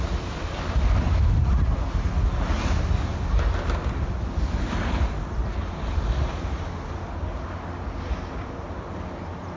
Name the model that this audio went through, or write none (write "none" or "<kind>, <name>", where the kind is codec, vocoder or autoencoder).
none